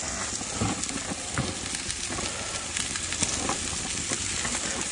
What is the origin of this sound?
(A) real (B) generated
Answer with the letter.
A